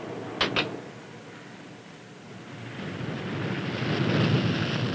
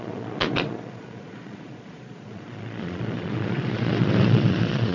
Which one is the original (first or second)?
first